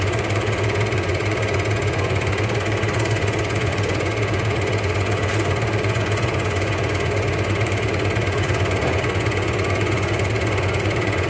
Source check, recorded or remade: remade